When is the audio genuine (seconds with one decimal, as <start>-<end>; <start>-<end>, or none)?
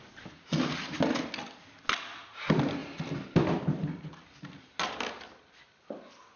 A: 0.0-6.4